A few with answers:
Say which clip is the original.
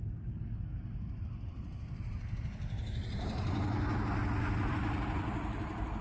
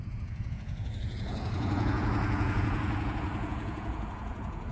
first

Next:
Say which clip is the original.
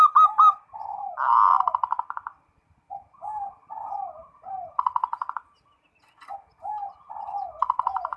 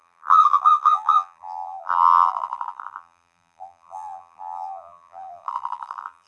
first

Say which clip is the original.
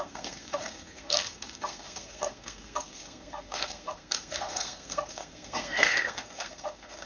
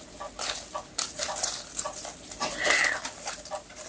second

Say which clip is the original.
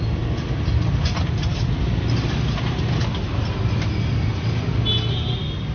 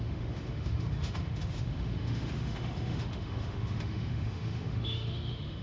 first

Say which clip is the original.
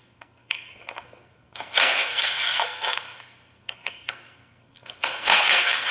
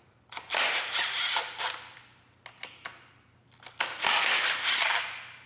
second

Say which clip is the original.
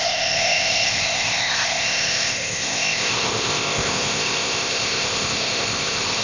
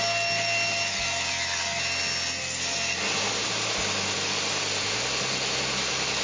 second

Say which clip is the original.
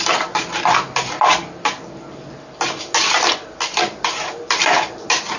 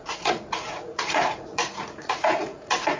first